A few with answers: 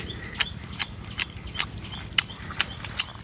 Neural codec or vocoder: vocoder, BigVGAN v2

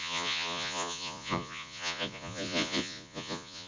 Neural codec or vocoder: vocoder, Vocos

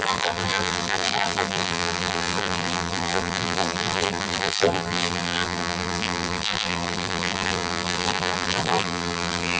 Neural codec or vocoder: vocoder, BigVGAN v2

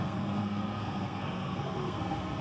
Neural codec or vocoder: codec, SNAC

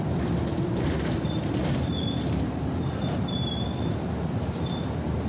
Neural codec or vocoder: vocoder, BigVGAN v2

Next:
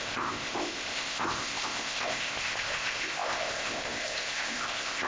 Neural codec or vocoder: codec, ZipCodec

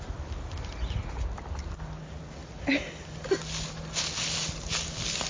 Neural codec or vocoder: none